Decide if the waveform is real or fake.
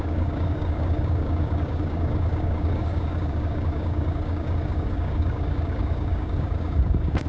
fake